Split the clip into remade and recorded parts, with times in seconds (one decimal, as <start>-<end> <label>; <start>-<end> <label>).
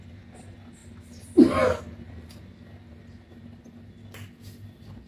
0.0-5.1 recorded